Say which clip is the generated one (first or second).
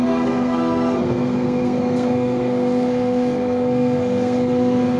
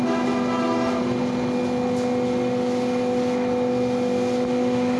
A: first